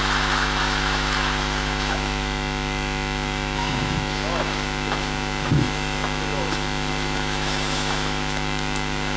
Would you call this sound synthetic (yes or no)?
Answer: yes